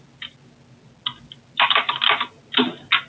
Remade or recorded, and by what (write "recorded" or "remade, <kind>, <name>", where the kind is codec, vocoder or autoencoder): recorded